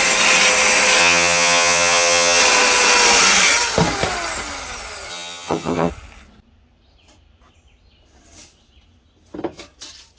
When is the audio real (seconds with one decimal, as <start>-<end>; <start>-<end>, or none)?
0.0-1.0; 2.4-5.1; 5.9-10.2